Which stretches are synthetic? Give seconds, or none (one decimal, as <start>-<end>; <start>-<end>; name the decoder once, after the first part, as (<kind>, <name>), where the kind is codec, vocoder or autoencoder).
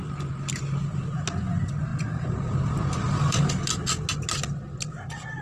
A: none